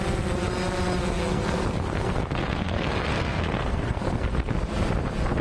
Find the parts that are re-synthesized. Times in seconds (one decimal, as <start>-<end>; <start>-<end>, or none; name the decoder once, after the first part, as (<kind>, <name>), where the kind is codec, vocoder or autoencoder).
1.3-4.5 (codec, SNAC)